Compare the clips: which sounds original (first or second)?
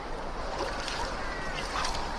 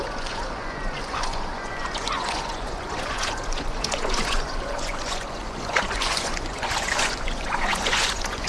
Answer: first